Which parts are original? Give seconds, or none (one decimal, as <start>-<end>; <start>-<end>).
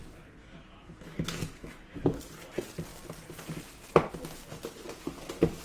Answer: 0.0-0.4; 2.2-5.6